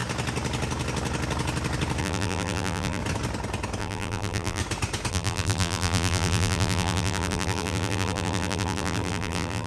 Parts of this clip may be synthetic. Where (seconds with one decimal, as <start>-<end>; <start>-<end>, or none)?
2.0-3.0; 3.8-4.6; 5.1-9.7